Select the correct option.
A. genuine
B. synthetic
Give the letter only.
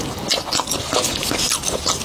A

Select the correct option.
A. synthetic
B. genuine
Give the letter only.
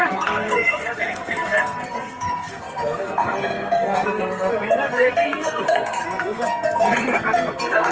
A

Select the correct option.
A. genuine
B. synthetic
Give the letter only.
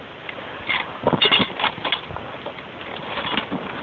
A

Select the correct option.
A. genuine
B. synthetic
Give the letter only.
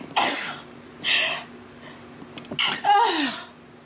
A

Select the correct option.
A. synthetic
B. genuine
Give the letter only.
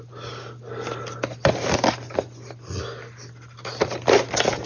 B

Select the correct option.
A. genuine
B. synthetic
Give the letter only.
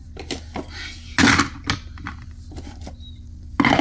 A